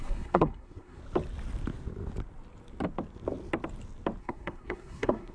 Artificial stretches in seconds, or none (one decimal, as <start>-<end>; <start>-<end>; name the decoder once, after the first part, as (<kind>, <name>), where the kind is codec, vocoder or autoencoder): 0.0-1.0 (codec, SNAC); 4.2-5.3